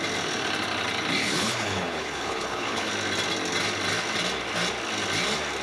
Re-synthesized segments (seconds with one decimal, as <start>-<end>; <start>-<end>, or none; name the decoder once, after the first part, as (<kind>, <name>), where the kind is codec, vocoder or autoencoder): 1.2-2.9 (codec, HILCodec)